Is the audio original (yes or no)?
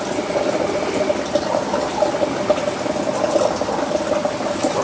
yes